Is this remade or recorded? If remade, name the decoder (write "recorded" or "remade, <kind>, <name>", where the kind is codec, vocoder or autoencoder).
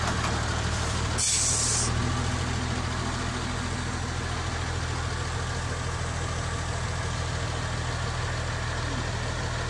recorded